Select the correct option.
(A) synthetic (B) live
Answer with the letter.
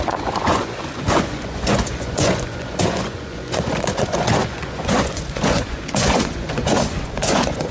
A